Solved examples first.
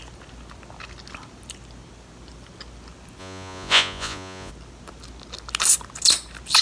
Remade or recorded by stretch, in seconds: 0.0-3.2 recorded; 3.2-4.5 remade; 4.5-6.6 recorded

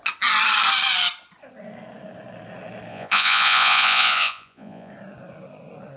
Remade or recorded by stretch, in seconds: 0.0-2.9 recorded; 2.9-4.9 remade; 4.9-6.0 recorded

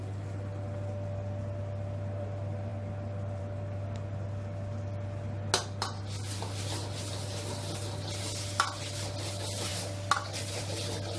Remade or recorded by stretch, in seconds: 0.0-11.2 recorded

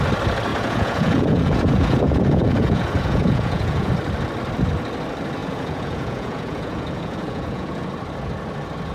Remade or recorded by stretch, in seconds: 0.0-0.5 recorded; 0.5-3.9 remade; 3.9-5.4 recorded; 5.4-7.9 remade; 7.9-8.9 recorded

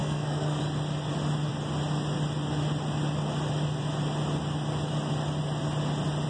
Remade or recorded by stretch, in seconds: 0.0-0.6 remade; 0.6-6.3 recorded

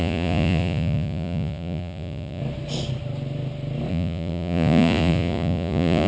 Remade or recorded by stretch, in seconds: 0.0-2.4 remade; 2.4-3.9 recorded; 3.9-6.1 remade